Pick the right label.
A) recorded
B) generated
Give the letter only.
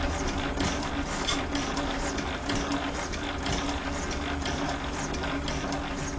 A